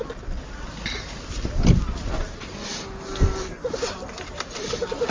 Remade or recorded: recorded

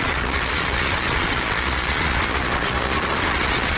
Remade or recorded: remade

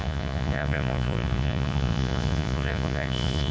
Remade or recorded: remade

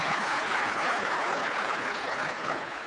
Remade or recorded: remade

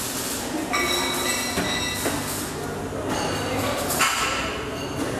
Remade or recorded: recorded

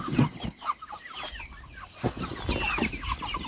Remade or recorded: recorded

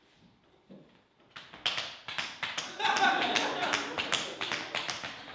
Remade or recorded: recorded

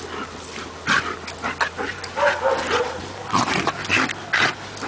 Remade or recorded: recorded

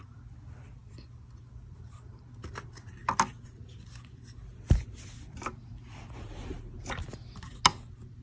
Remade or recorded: recorded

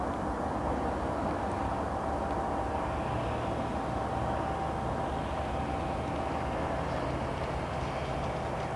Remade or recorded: recorded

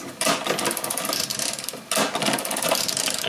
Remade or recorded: recorded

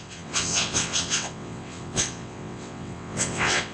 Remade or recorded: remade